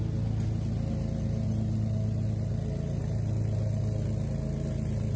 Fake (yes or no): no